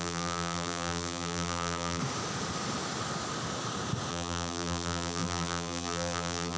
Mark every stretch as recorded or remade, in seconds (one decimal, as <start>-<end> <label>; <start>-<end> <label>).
0.0-2.0 remade; 2.0-4.1 recorded; 4.1-6.6 remade